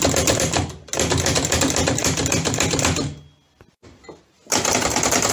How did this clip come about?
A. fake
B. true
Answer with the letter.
B